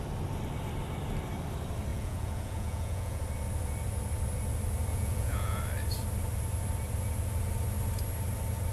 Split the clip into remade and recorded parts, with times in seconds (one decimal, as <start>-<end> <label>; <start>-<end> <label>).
0.0-1.9 recorded; 1.9-3.2 remade; 3.2-4.9 recorded; 4.9-5.6 remade; 5.6-8.7 recorded

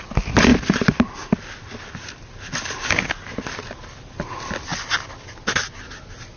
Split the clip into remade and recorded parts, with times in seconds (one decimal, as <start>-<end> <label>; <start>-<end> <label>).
0.0-6.4 recorded

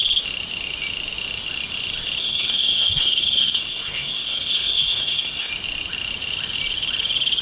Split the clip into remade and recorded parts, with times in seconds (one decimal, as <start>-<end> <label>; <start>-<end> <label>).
0.0-2.2 recorded; 2.2-5.5 remade; 5.5-7.4 recorded